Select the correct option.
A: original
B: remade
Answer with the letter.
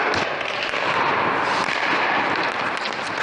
A